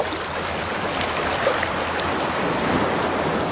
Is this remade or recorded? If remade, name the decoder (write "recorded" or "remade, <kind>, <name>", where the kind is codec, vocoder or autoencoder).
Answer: recorded